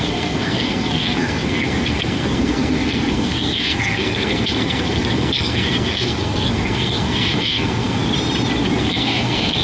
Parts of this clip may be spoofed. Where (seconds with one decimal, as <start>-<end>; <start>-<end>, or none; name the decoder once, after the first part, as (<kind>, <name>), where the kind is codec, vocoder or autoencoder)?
0.0-8.0 (codec, SNAC); 8.8-9.6